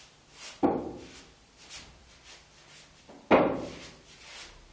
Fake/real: real